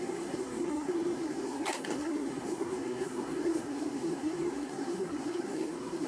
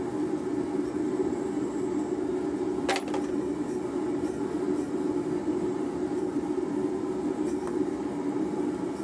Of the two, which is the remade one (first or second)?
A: first